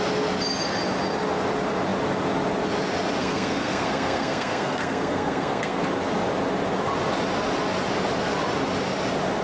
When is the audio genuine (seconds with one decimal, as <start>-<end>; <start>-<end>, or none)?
0.0-3.2; 5.8-9.4